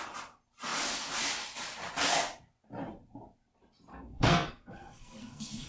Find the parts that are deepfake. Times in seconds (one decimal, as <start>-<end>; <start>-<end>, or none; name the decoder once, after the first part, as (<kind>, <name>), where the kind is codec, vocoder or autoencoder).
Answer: 3.9-5.7 (codec, SNAC)